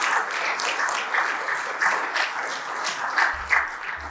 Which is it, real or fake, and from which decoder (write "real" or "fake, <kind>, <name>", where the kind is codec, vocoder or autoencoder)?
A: real